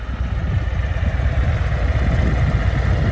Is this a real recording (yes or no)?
yes